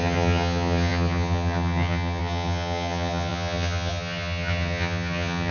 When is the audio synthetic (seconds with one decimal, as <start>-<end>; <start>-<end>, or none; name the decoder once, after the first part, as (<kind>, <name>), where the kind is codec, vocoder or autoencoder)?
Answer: 0.0-5.5 (vocoder, HiFi-GAN)